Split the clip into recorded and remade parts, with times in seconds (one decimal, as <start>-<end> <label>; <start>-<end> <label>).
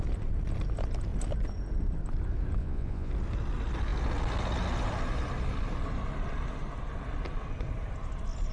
0.0-2.6 recorded; 2.6-3.1 remade; 3.1-8.5 recorded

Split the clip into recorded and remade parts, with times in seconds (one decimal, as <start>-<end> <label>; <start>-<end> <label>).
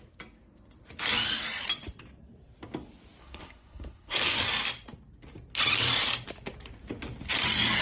0.0-3.2 recorded; 3.2-4.4 remade; 4.4-7.8 recorded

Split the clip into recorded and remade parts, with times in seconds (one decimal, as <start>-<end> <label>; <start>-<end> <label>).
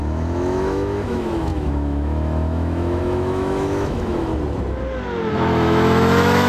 0.0-4.3 remade; 4.3-5.3 recorded; 5.3-6.5 remade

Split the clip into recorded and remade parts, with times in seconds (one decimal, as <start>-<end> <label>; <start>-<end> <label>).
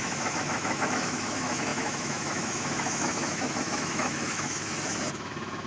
0.0-5.7 remade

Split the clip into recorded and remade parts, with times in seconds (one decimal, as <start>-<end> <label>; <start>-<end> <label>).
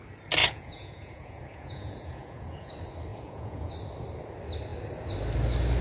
0.0-0.4 recorded; 0.4-2.7 remade; 2.7-3.1 recorded; 3.1-3.7 remade; 3.7-5.8 recorded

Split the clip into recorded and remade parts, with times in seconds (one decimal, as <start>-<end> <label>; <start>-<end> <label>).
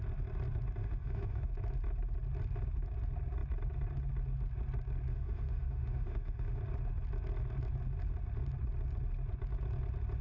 0.0-0.8 recorded; 0.8-1.5 remade; 1.5-5.1 recorded; 5.1-6.6 remade; 6.6-10.2 recorded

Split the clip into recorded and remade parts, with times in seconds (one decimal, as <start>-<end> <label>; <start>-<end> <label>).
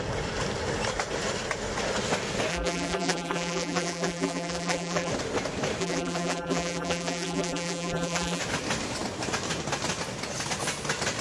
0.0-2.5 recorded; 2.5-5.1 remade; 5.1-5.8 recorded; 5.8-8.4 remade; 8.4-11.2 recorded